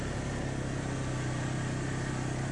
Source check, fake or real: real